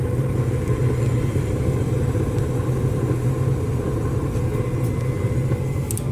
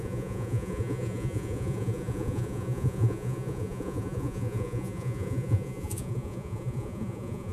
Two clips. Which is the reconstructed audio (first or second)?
second